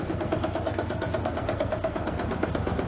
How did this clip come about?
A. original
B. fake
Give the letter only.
B